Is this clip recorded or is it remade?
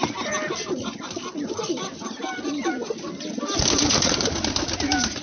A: recorded